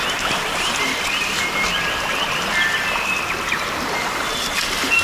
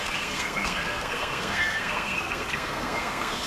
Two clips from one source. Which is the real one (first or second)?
first